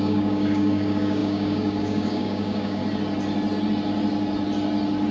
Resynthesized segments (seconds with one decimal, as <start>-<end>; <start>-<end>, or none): 0.0-2.8